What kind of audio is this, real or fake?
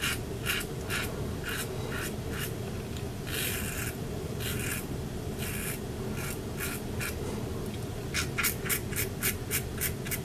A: real